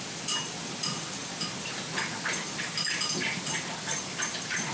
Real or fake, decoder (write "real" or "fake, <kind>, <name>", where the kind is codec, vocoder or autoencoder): real